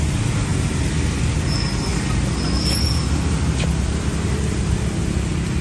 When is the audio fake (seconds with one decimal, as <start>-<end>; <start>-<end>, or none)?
none